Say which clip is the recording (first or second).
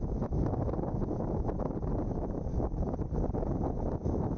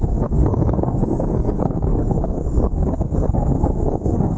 first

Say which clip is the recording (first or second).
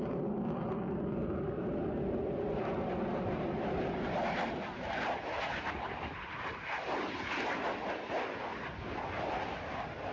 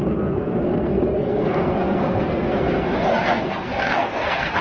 first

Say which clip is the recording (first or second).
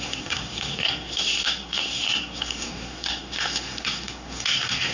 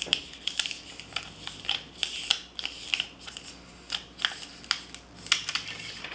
second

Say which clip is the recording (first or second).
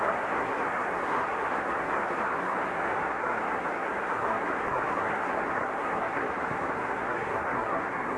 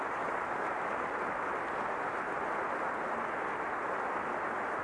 second